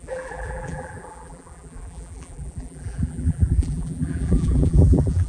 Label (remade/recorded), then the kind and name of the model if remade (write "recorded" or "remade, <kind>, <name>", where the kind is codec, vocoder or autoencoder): remade, vocoder, BigVGAN v2